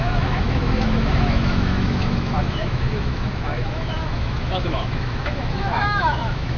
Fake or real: fake